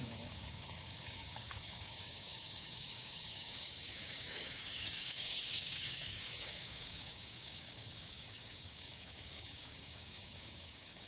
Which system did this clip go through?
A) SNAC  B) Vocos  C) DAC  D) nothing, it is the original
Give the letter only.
C